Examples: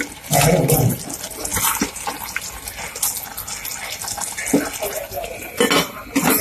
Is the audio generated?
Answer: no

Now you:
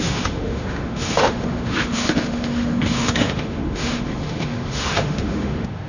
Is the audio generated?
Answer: yes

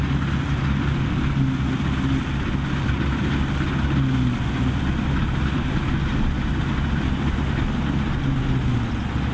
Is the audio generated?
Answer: no